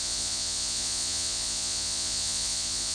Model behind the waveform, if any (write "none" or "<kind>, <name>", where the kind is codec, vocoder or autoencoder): vocoder, Vocos